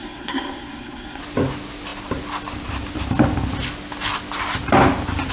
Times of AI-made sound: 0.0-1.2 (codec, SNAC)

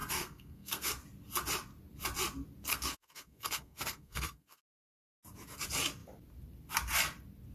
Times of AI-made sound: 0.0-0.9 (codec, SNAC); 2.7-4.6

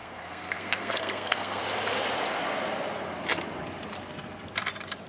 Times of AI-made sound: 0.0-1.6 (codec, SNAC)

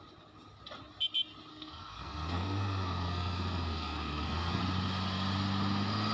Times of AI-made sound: 1.5-4.6 (codec, SNAC)

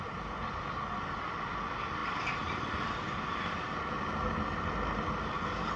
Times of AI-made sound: none

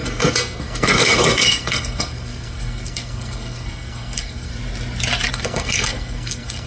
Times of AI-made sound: 0.0-4.5 (codec, SNAC); 5.3-6.7